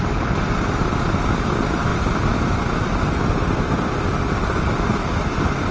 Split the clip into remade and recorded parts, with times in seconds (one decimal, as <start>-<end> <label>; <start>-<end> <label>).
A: 0.0-5.7 recorded